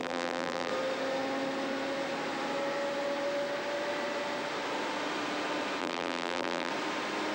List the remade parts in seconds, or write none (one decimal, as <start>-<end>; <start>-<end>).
0.0-0.7; 5.8-6.7